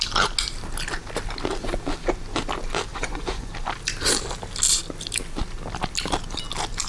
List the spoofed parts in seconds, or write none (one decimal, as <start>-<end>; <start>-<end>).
2.9-3.5